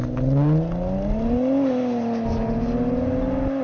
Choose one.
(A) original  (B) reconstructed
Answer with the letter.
A